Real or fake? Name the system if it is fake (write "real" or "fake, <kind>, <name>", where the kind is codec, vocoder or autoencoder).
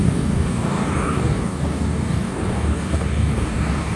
fake, codec, DAC